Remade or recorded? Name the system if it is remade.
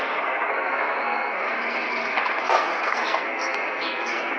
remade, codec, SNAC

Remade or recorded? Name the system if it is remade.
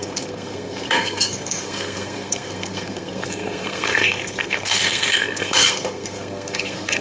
remade, codec, SNAC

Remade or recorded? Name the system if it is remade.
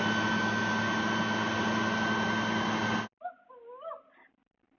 recorded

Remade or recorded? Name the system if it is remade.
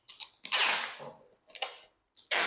recorded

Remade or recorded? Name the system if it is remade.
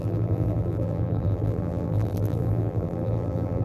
remade, vocoder, BigVGAN v2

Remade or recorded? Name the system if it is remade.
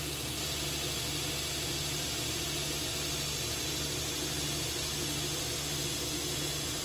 recorded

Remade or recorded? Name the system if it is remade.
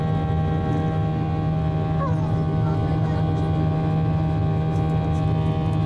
recorded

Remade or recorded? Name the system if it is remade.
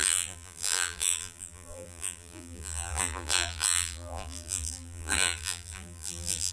remade, vocoder, BigVGAN v2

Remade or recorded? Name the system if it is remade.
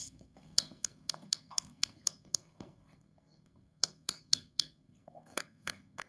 remade, codec, SNAC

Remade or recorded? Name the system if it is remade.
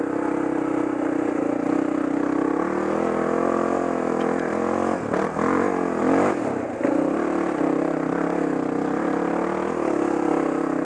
recorded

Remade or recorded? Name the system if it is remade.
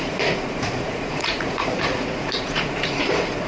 remade, vocoder, Vocos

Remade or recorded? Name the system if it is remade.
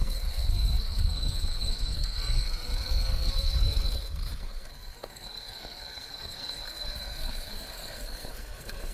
remade, codec, SNAC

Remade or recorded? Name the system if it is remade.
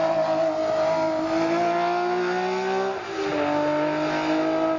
recorded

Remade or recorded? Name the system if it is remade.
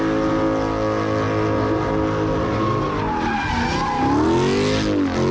recorded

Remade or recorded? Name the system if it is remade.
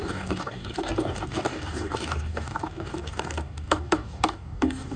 remade, codec, DAC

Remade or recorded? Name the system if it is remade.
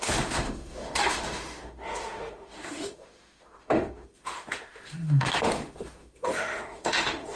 remade, autoencoder, DAC-VAE